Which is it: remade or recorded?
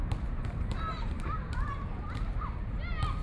remade